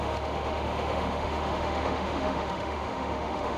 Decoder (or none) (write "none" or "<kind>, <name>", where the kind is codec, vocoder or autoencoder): autoencoder, DAC-VAE